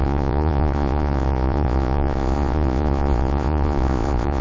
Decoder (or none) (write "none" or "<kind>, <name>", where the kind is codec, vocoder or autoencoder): vocoder, Vocos